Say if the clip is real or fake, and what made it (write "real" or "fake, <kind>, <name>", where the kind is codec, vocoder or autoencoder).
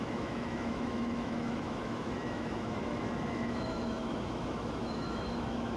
fake, autoencoder, DAC-VAE